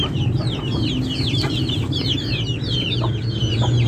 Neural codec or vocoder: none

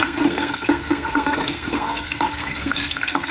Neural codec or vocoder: codec, SNAC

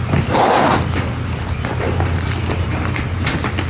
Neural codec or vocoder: none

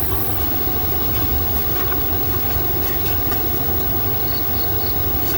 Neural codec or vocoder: none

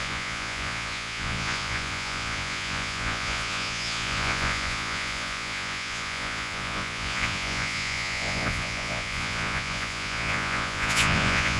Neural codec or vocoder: vocoder, Vocos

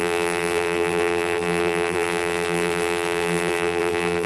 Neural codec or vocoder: vocoder, BigVGAN v2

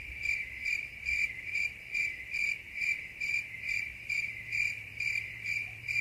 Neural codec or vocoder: vocoder, BigVGAN v2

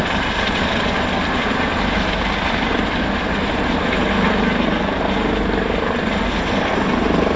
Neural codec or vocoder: none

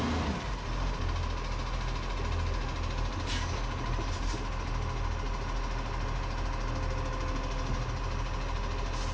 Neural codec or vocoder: none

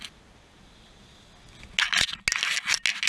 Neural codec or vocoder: none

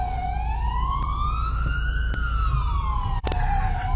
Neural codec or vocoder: none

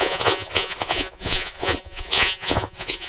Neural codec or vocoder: vocoder, Vocos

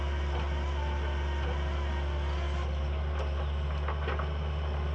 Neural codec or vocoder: none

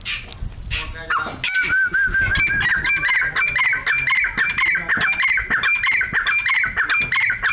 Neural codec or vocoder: none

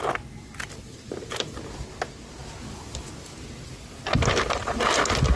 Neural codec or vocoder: none